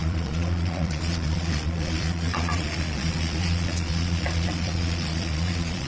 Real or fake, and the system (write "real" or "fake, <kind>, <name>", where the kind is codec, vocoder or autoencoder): fake, vocoder, Vocos